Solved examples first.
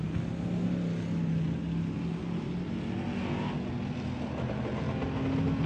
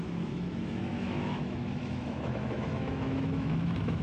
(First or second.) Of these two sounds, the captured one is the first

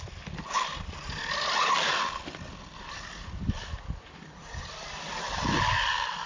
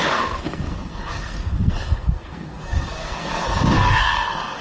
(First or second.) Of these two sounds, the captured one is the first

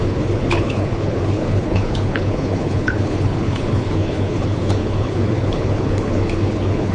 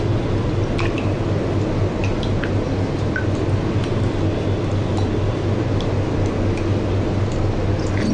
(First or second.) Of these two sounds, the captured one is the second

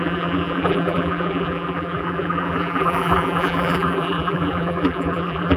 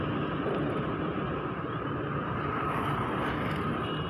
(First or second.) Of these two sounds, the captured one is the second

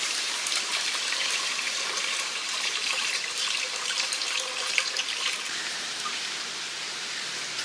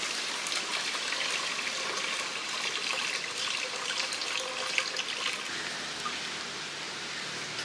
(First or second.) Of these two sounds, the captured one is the second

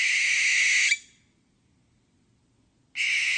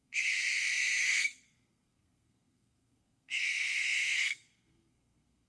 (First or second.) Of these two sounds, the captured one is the first